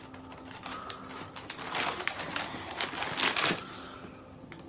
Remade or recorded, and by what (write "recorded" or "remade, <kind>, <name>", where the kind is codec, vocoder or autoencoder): recorded